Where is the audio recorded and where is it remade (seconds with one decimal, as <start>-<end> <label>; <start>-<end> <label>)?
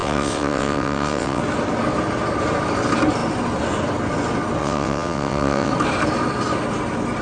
0.0-1.4 remade; 1.4-4.6 recorded; 4.6-5.7 remade; 5.7-7.2 recorded